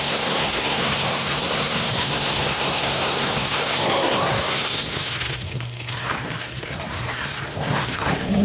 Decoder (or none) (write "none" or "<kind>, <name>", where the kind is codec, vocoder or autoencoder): codec, SNAC